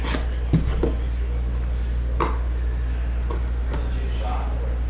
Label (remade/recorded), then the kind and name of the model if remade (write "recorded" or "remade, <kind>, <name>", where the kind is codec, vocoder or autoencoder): recorded